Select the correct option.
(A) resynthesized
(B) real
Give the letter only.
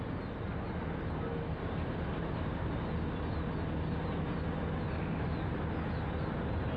B